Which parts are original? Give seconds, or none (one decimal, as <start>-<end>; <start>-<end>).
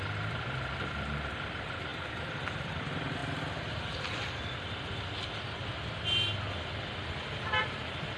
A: 3.2-7.6